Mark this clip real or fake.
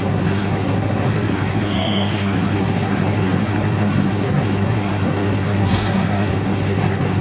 fake